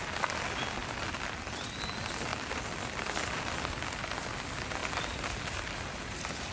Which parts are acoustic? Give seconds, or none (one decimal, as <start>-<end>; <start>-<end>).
0.0-0.8; 1.9-2.3; 4.3-4.8